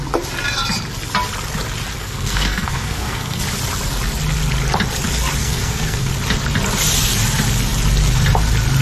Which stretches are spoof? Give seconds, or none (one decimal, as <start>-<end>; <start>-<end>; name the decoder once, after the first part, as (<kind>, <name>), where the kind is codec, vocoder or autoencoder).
2.0-3.4 (codec, SNAC); 5.4-6.1